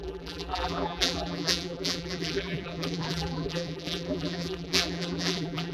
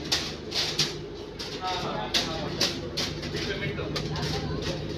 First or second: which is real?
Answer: second